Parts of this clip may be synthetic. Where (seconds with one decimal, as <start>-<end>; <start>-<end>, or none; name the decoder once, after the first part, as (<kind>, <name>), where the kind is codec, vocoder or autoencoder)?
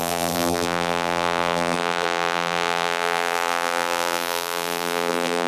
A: 0.0-5.5 (vocoder, BigVGAN v2)